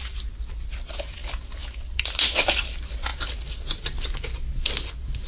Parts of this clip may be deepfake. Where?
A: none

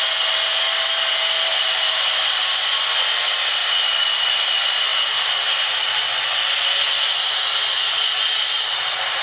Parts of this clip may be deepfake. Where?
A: 3.6-4.2 (vocoder, BigVGAN v2)

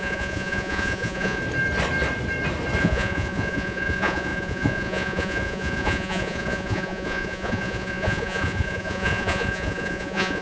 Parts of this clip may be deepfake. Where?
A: 0.0-1.4 (vocoder, Vocos); 2.8-10.4

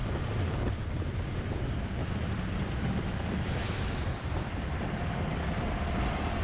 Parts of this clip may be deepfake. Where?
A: 0.0-5.3 (vocoder, BigVGAN v2); 5.8-6.4